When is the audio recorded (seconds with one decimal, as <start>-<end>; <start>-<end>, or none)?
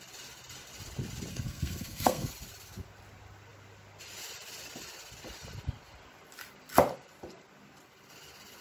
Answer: 0.0-1.3; 2.3-8.6